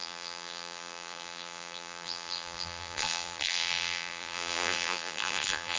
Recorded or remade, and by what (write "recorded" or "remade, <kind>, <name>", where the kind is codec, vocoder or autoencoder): remade, vocoder, BigVGAN v2